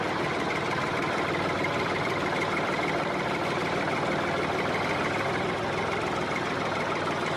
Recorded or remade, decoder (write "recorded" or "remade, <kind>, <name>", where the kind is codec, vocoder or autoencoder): remade, vocoder, BigVGAN v2